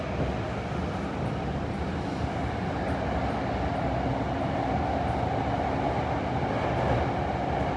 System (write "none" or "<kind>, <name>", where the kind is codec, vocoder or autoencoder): none